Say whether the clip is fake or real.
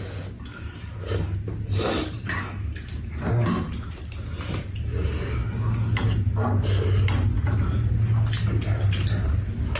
real